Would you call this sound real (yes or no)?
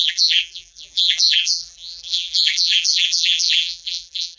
no